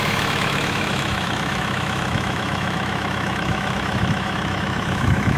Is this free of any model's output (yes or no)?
no